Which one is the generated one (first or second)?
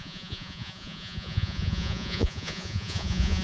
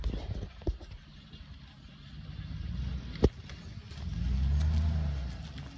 first